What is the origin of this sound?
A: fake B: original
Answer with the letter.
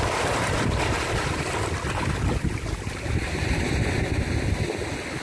B